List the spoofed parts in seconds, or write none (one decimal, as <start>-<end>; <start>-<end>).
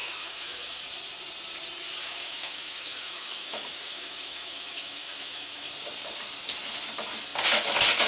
0.0-0.8; 2.0-5.7